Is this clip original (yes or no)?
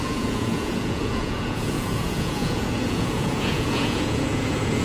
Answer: no